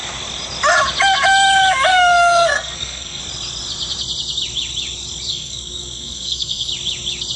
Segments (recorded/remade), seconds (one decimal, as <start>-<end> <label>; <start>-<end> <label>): 0.0-1.9 recorded; 1.9-3.2 remade; 3.2-5.3 recorded; 5.3-6.7 remade; 6.7-7.4 recorded